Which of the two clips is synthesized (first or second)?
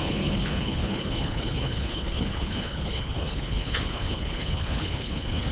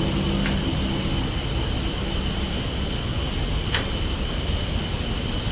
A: first